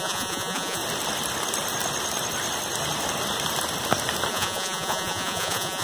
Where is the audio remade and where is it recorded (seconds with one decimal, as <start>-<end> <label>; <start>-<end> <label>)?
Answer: 0.0-0.8 remade; 0.8-4.3 recorded; 4.3-5.8 remade

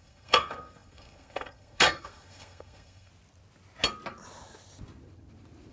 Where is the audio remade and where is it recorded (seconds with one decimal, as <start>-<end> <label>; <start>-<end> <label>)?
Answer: 0.0-3.1 remade; 3.1-5.7 recorded